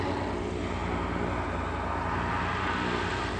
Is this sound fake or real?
real